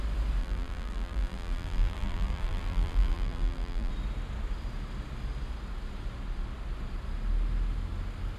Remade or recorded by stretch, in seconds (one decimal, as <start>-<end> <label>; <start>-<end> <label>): 0.0-0.4 recorded; 0.4-3.9 remade; 3.9-8.4 recorded